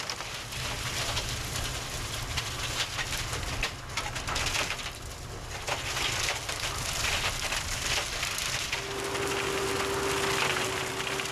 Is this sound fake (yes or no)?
no